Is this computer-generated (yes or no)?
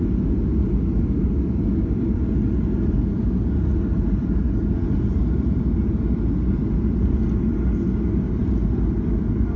no